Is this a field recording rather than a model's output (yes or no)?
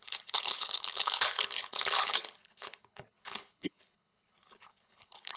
no